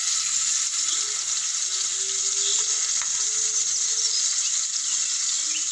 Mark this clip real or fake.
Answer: real